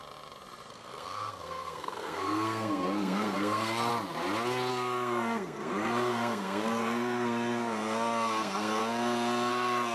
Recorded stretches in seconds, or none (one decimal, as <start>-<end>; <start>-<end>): 0.0-0.7; 3.9-4.7; 8.8-9.5